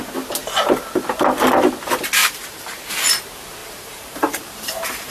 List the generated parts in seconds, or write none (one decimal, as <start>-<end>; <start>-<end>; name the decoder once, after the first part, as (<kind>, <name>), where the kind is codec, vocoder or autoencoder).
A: 2.2-2.9 (vocoder, BigVGAN v2); 3.6-5.1